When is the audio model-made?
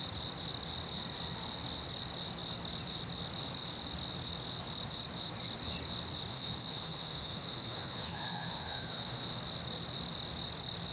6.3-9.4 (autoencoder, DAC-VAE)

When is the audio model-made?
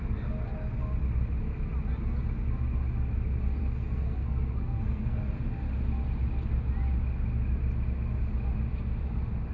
3.6-5.2 (codec, SNAC)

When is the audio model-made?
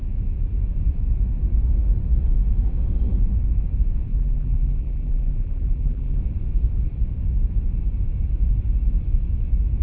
4.1-6.2 (vocoder, BigVGAN v2)